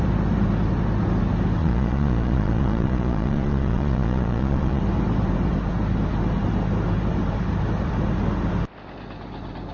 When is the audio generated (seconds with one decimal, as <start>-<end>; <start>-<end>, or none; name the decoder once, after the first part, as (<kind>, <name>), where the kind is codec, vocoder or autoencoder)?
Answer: 1.6-4.8 (vocoder, Vocos)